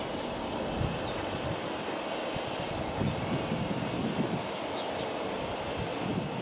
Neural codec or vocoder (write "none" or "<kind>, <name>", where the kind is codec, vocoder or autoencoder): none